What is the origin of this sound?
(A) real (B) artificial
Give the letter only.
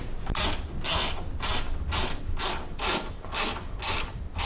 A